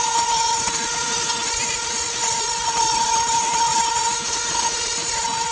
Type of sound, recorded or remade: remade